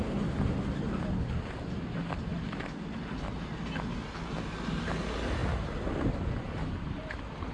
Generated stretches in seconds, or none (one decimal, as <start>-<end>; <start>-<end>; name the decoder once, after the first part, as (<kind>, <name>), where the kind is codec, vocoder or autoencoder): none